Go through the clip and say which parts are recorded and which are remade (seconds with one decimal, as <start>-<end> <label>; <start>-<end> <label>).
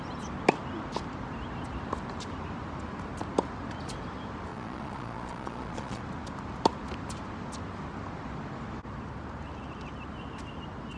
0.0-4.5 recorded; 4.5-6.0 remade; 6.0-11.0 recorded